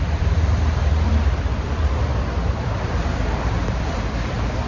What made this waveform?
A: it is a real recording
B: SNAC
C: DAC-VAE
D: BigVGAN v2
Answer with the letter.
D